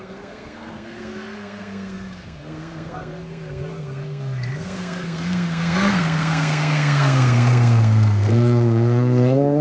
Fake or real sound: fake